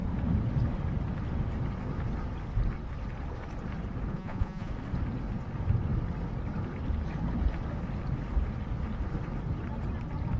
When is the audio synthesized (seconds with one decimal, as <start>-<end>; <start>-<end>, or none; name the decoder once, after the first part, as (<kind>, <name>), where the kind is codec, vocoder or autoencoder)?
4.1-4.7 (vocoder, Vocos)